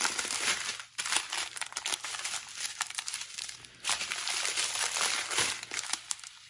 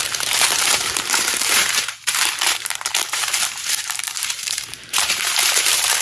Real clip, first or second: first